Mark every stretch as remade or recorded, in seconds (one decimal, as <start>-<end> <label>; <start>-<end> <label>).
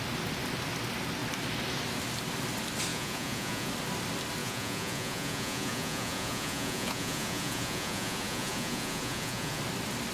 0.0-2.9 recorded; 2.9-3.7 remade; 3.7-4.4 recorded; 4.4-9.6 remade; 9.6-10.1 recorded